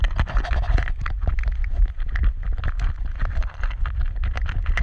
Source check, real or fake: real